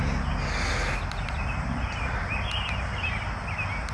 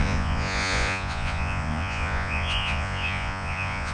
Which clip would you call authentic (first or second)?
first